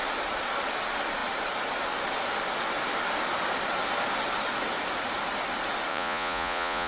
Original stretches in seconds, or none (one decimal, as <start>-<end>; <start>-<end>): 0.0-5.9